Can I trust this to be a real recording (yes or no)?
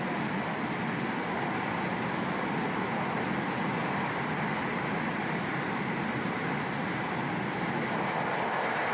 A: yes